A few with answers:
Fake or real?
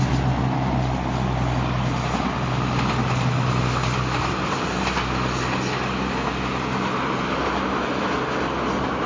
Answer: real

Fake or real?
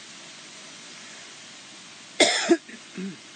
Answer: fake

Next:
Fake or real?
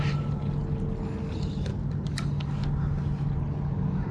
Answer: real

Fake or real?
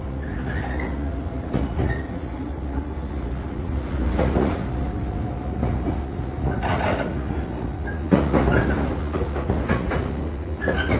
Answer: fake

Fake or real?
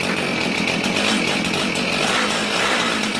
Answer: real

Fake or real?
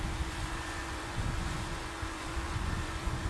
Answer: fake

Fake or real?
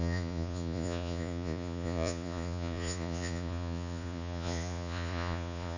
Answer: fake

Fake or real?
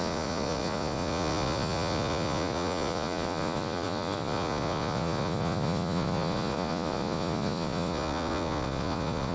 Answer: fake